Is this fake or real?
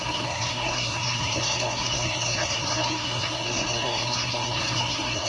fake